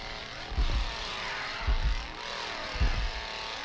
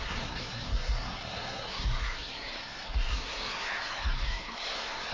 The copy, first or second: second